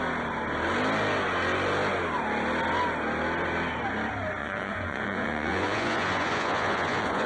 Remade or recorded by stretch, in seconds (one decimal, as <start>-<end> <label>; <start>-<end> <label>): 0.0-4.4 recorded; 4.4-7.3 remade